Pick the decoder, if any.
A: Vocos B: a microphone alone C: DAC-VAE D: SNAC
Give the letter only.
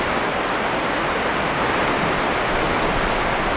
B